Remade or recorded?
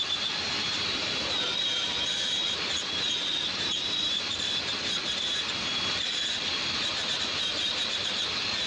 remade